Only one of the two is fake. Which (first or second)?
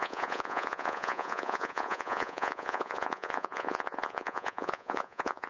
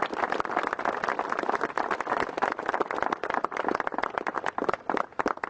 first